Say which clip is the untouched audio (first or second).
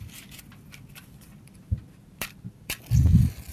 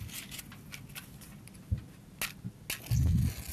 second